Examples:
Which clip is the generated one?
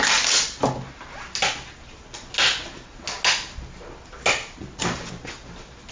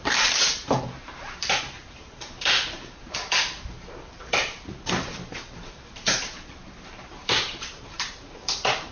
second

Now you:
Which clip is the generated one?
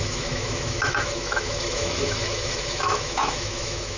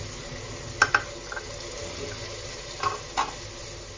first